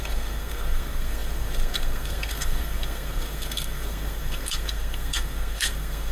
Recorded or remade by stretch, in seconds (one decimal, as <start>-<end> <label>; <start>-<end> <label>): 0.0-6.1 remade